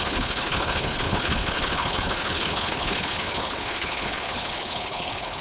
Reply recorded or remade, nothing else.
remade